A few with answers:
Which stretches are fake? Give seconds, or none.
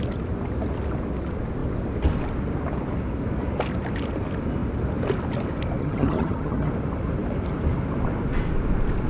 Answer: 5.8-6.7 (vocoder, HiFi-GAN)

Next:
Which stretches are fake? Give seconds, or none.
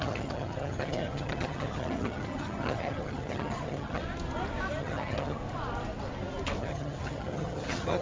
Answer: 0.0-4.0 (vocoder, HiFi-GAN); 4.8-5.4; 6.6-8.0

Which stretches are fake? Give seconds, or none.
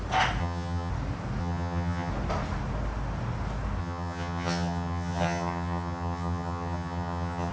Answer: 0.4-0.9 (vocoder, HiFi-GAN); 1.4-2.1; 3.8-7.5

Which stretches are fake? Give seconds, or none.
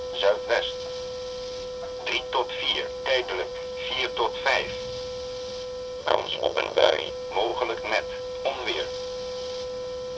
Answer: 6.0-7.1 (vocoder, HiFi-GAN)